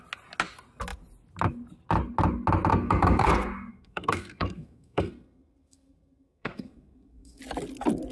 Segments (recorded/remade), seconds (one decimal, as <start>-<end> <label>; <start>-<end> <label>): 0.0-2.7 recorded; 2.7-3.3 remade; 3.3-3.7 recorded; 3.7-7.4 remade; 7.4-8.1 recorded